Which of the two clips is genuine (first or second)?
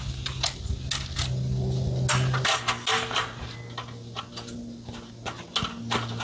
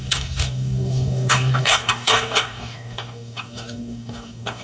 first